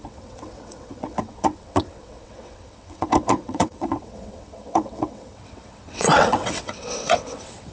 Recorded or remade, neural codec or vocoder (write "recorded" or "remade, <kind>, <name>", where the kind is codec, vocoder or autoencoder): remade, vocoder, WaveNeXt